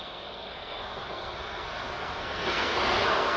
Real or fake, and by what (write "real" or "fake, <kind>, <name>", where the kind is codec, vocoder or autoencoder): fake, codec, SNAC